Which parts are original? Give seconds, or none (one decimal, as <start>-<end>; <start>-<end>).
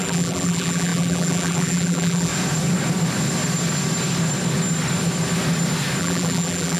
2.3-6.0